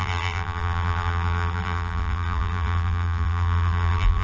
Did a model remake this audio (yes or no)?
yes